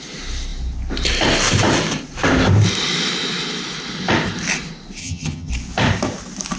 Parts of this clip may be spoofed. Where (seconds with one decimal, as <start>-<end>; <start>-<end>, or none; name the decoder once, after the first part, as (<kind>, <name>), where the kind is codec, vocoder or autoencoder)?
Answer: 5.0-5.5 (vocoder, HiFi-GAN)